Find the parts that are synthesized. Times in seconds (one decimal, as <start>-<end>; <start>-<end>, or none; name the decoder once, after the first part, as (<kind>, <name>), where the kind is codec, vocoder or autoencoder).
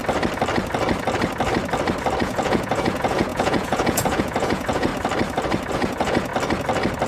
2.2-4.9 (vocoder, Vocos); 5.7-6.3